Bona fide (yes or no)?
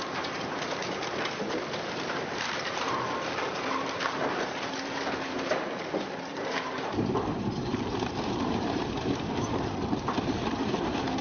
no